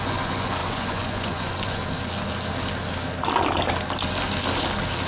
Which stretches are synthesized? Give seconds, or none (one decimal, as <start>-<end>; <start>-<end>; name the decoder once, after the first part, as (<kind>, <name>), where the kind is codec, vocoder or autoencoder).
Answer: 0.0-1.8 (vocoder, Vocos)